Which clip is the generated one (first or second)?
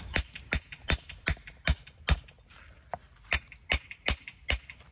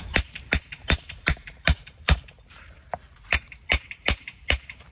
second